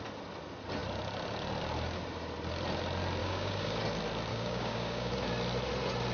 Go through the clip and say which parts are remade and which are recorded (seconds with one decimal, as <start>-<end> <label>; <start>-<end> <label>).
0.0-3.2 recorded; 3.2-3.8 remade; 3.8-4.3 recorded; 4.3-5.1 remade; 5.1-6.1 recorded